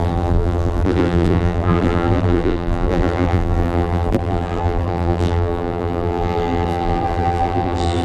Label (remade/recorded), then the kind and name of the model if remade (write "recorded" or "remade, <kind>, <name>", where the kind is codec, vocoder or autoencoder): remade, vocoder, BigVGAN v2